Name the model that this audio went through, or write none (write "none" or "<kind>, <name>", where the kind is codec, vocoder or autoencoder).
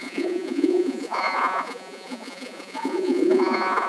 vocoder, Vocos